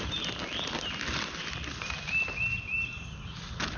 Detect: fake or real real